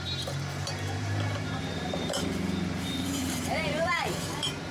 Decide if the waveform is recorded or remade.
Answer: remade